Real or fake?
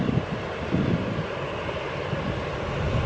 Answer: real